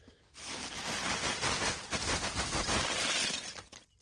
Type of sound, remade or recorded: recorded